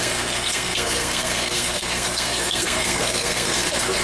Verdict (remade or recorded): remade